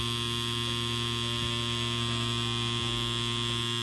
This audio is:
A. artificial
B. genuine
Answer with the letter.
B